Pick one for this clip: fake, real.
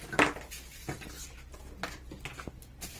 real